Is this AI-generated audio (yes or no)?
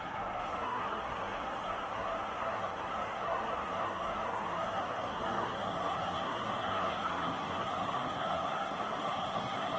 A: yes